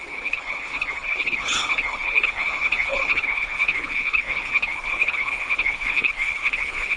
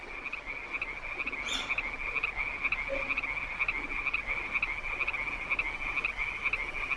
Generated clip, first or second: first